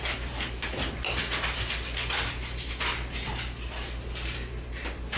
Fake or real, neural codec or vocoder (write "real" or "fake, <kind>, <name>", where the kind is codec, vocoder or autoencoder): real